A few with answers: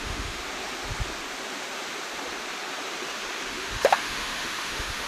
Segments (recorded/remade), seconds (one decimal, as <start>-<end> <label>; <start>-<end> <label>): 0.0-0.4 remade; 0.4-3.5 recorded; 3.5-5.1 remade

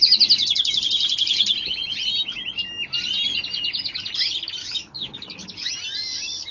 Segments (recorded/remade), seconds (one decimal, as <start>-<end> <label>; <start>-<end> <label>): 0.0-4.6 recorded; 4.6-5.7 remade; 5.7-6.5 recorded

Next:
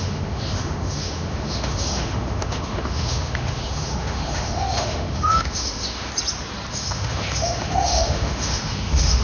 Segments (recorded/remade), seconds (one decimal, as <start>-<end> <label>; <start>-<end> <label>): 0.0-6.1 remade; 6.1-6.7 recorded; 6.7-9.2 remade

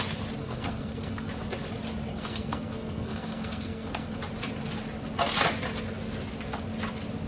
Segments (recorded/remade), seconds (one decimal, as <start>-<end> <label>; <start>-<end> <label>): 0.0-0.4 recorded; 0.4-1.3 remade; 1.3-2.1 recorded; 2.1-4.2 remade; 4.2-7.3 recorded